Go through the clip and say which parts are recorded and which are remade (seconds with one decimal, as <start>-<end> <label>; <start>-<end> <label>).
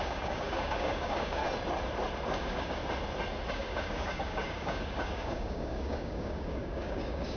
0.0-1.4 remade; 1.4-2.4 recorded; 2.4-2.8 remade; 2.8-3.5 recorded; 3.5-7.4 remade